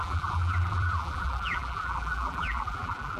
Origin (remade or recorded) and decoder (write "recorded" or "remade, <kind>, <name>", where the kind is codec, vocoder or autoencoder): remade, vocoder, BigVGAN v2